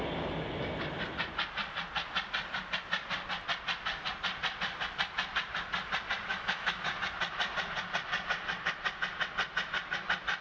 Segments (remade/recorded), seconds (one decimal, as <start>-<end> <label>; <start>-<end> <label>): 0.0-6.3 recorded; 6.3-6.9 remade; 6.9-10.4 recorded

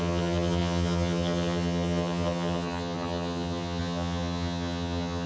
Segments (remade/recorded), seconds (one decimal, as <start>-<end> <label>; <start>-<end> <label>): 0.0-5.3 remade

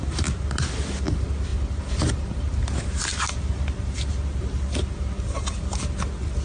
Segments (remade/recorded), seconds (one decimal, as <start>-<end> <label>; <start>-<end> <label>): 0.0-6.4 recorded

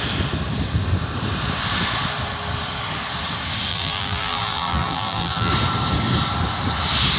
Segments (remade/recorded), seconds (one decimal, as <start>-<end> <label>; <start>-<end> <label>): 0.0-3.7 recorded; 3.7-5.5 remade; 5.5-7.2 recorded

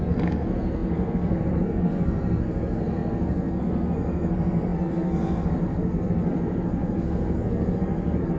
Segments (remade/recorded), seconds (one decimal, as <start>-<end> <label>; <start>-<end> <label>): 0.0-8.4 remade

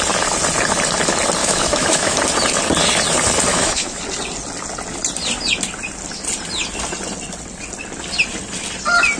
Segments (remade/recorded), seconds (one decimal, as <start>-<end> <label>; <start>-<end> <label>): 0.0-1.4 recorded; 1.4-2.2 remade; 2.2-3.5 recorded; 3.5-4.0 remade; 4.0-9.2 recorded